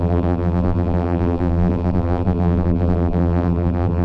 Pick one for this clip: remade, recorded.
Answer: remade